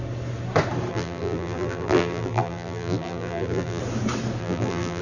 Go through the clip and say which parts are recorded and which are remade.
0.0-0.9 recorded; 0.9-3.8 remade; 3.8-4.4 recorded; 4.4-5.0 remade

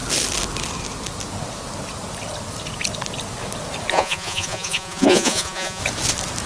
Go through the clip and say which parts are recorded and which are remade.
0.0-3.9 recorded; 3.9-5.8 remade; 5.8-6.5 recorded